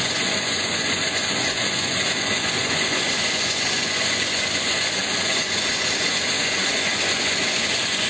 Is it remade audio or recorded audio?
remade